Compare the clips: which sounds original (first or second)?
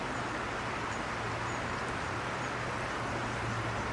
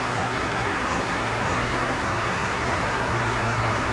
first